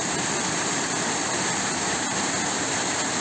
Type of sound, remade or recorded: recorded